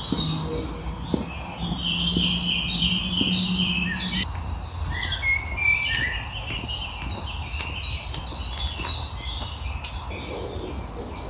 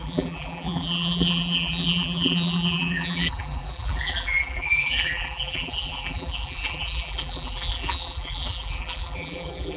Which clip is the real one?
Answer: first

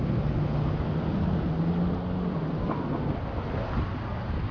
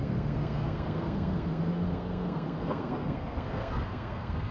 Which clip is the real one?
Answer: first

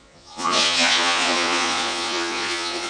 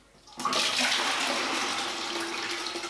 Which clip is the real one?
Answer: second